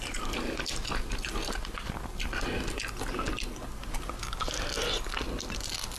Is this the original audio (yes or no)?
yes